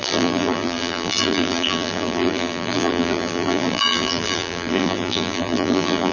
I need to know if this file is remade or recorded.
remade